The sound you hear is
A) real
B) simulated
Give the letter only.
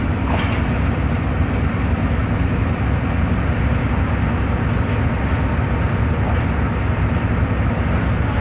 A